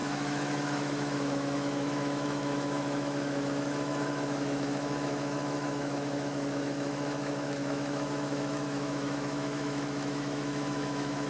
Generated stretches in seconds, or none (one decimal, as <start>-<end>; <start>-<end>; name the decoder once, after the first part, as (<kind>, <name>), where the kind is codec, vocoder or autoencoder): 0.0-11.3 (autoencoder, DAC-VAE)